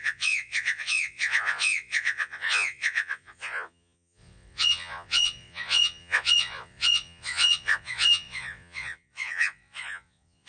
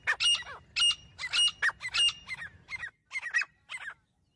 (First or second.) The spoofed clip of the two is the first